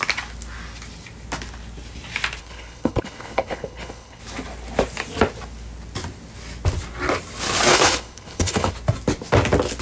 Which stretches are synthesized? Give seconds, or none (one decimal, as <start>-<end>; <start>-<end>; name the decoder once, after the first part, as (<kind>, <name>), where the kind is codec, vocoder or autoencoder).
2.4-4.2 (codec, HILCodec); 7.7-8.7